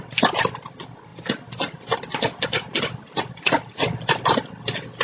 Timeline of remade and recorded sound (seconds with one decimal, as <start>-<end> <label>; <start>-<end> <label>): 0.0-5.0 recorded